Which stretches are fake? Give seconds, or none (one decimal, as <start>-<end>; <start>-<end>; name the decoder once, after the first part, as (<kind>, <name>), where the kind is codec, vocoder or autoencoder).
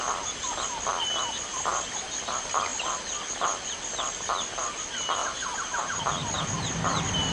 5.2-6.0 (vocoder, BigVGAN v2)